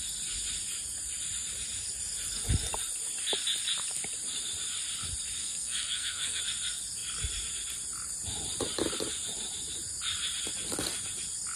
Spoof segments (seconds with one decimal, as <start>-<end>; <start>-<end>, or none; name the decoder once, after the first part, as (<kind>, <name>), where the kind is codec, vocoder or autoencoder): 5.4-6.4 (codec, SNAC)